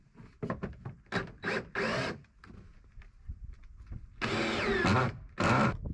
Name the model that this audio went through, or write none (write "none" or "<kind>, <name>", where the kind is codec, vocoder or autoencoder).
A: none